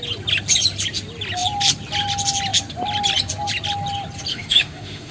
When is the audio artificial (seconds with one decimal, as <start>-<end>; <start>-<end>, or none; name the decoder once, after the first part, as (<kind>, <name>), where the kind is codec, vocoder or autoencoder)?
4.3-5.1 (autoencoder, DAC-VAE)